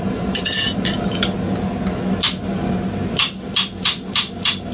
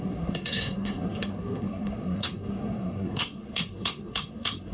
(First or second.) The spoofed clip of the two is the second